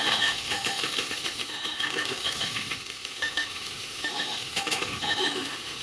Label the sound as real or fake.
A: fake